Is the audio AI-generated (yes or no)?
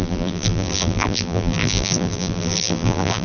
yes